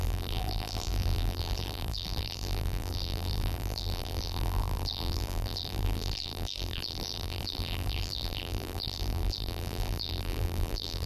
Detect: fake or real fake